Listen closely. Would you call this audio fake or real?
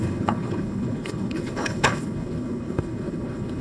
fake